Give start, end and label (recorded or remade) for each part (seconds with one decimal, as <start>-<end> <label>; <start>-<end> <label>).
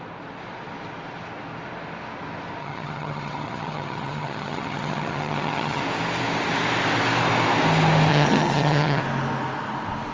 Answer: 0.0-2.6 recorded; 2.6-5.8 remade; 5.8-8.1 recorded; 8.1-9.0 remade; 9.0-10.1 recorded